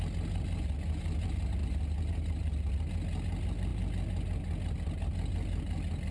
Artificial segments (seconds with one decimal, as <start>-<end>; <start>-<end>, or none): none